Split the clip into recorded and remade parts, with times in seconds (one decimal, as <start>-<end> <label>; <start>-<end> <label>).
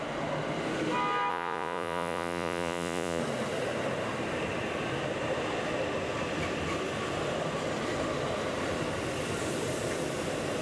0.0-1.3 recorded; 1.3-3.2 remade; 3.2-10.6 recorded